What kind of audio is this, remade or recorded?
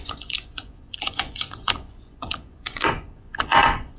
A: remade